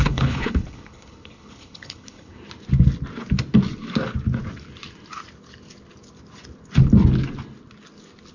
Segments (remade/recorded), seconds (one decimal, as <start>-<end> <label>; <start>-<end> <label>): 0.0-2.5 remade; 2.5-8.3 recorded